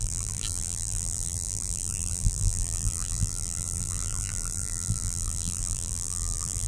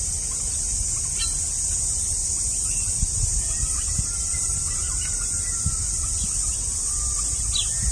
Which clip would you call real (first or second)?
second